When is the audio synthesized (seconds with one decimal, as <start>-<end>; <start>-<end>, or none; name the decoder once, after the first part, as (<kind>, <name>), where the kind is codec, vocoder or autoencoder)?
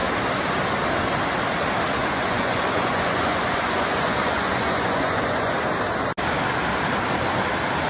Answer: 2.0-5.5 (vocoder, Vocos)